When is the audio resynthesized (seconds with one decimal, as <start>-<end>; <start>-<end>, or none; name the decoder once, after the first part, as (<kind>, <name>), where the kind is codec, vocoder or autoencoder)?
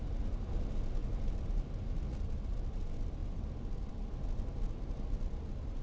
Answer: 1.0-2.2 (vocoder, BigVGAN v2); 3.2-3.9